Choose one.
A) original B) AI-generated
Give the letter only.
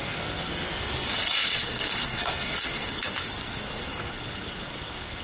B